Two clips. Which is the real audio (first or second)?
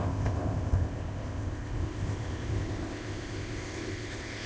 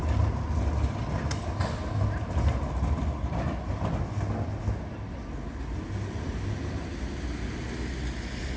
second